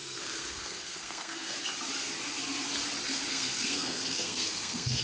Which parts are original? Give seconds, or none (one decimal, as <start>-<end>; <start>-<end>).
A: 1.6-3.3